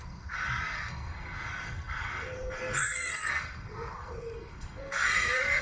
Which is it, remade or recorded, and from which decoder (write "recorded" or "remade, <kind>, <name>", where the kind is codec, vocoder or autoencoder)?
remade, codec, SNAC